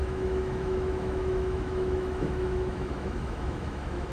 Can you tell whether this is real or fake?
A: fake